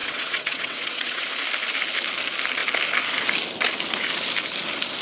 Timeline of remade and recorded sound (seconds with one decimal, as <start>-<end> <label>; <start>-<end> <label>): 0.0-1.3 remade; 1.3-5.0 recorded